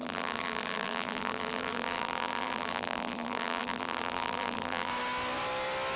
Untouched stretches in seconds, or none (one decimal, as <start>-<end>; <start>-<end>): 4.9-6.0